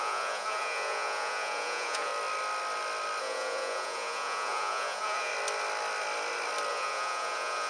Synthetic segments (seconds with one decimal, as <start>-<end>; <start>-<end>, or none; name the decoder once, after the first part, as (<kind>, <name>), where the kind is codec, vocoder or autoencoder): 0.0-2.1 (vocoder, Vocos); 3.2-5.3; 6.7-7.7